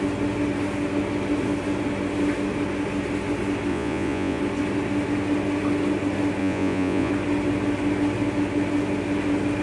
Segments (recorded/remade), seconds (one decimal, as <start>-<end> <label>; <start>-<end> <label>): 0.0-3.7 recorded; 3.7-4.4 remade; 4.4-6.4 recorded; 6.4-7.1 remade; 7.1-9.6 recorded